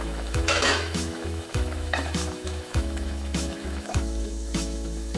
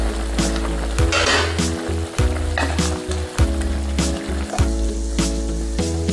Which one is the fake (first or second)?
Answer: first